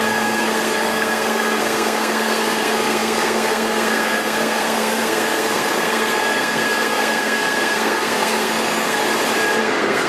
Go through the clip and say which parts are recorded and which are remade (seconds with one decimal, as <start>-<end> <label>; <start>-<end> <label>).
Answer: 0.0-9.0 remade; 9.0-9.6 recorded; 9.6-10.1 remade